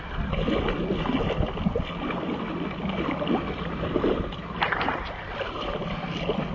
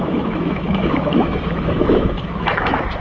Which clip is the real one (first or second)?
first